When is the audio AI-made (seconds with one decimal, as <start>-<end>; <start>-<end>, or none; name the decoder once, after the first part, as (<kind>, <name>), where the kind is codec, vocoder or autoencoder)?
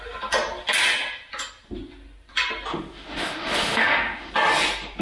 2.7-4.3 (autoencoder, DAC-VAE)